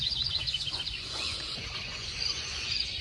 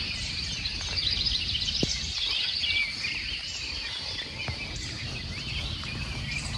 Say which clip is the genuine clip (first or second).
second